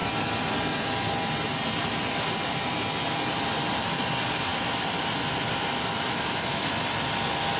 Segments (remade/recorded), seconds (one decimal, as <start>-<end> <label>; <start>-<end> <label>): 0.0-7.6 recorded